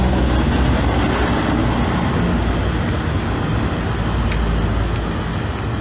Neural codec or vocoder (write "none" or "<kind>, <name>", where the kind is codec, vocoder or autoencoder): none